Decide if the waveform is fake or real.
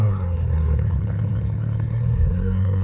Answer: fake